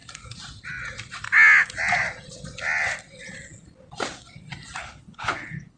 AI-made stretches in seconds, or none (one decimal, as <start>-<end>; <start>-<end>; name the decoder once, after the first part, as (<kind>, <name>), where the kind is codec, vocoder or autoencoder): 4.8-5.8 (codec, HILCodec)